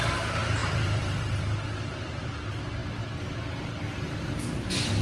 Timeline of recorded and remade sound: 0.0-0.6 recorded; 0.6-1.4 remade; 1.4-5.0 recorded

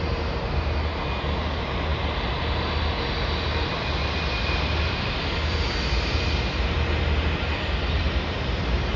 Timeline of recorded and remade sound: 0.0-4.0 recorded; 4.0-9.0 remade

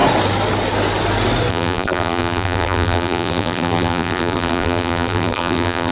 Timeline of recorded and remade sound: 0.0-1.5 recorded; 1.5-5.9 remade

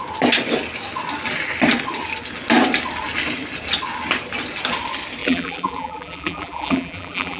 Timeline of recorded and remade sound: 0.0-5.2 recorded; 5.2-7.4 remade